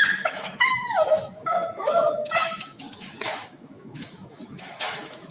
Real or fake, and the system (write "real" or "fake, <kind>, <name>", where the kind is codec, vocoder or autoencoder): fake, autoencoder, DAC-VAE